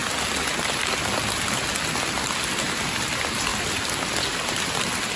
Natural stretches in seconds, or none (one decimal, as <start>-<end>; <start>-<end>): 0.0-5.2